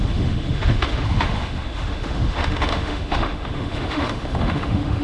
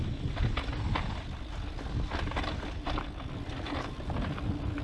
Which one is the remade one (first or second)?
first